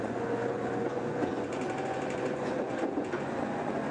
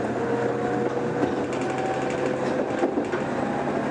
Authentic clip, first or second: second